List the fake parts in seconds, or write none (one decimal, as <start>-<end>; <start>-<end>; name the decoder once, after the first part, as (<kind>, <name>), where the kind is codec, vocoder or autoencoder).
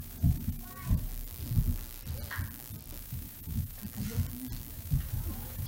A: 0.0-1.1 (vocoder, Vocos); 3.0-3.8; 4.7-5.7